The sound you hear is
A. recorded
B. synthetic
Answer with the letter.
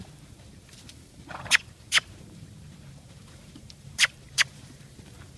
B